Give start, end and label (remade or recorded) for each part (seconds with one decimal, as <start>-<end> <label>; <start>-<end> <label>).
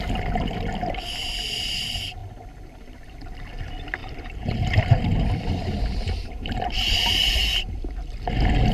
0.0-4.0 recorded; 4.0-6.8 remade; 6.8-7.2 recorded; 7.2-8.1 remade; 8.1-8.7 recorded